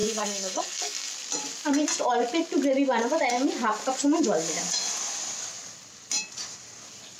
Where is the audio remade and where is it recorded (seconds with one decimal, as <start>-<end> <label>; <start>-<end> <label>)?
0.0-1.1 remade; 1.1-7.2 recorded